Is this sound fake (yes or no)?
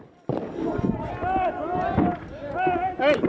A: no